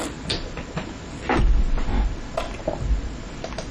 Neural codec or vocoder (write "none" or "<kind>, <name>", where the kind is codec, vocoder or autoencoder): none